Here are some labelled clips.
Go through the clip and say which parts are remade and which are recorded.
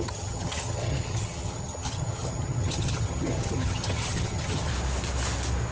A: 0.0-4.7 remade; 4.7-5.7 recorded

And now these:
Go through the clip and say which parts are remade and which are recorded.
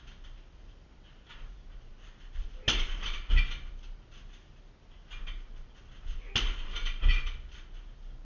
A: 0.0-8.2 recorded